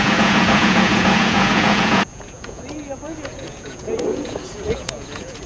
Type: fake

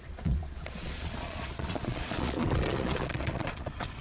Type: fake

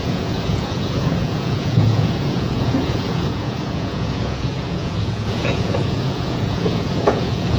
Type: fake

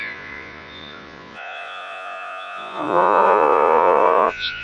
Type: fake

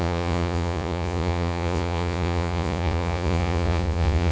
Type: fake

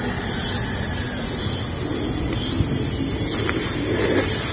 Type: real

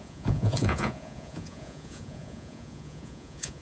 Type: fake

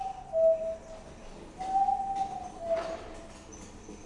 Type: real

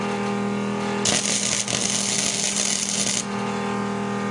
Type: real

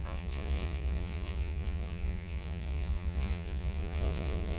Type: fake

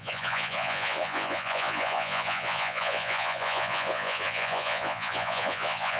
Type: fake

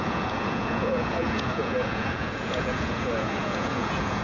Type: fake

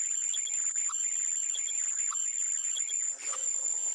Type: fake